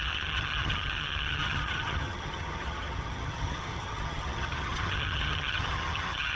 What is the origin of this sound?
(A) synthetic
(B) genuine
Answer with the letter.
A